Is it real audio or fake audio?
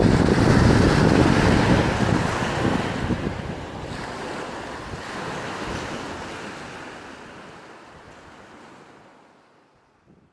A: real